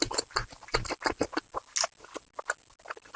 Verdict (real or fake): real